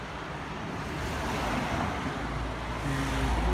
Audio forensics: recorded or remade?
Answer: recorded